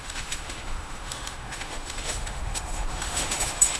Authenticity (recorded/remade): remade